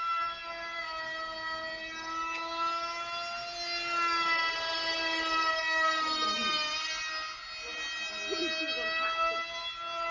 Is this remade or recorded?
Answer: recorded